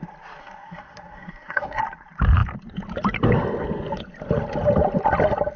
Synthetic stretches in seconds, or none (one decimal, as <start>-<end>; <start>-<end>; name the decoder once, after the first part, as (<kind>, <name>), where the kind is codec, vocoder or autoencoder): 0.4-1.8 (codec, SNAC)